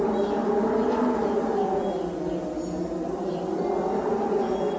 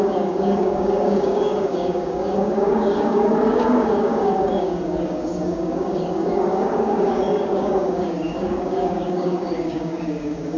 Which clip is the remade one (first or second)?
second